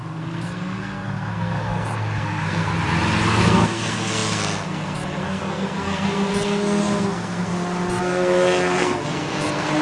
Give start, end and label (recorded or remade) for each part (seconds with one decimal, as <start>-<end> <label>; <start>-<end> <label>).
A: 0.0-2.7 remade; 2.7-3.4 recorded; 3.4-7.5 remade; 7.5-8.0 recorded; 8.0-9.8 remade